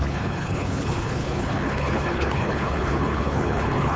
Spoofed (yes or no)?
yes